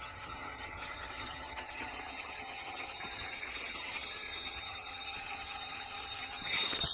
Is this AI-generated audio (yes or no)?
yes